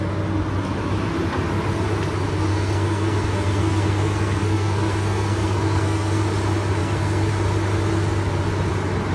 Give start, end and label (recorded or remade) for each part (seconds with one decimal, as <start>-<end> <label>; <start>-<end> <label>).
0.0-2.5 recorded; 2.5-6.2 remade; 6.2-6.8 recorded; 6.8-7.3 remade; 7.3-9.1 recorded